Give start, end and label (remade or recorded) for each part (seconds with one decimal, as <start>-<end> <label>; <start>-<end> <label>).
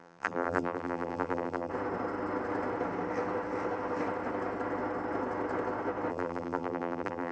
0.0-1.7 remade; 1.7-6.1 recorded; 6.1-7.3 remade